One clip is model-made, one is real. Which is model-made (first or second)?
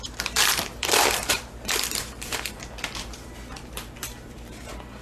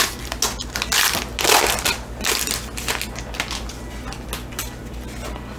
first